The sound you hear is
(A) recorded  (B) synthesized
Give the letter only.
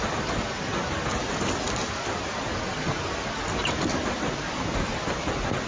A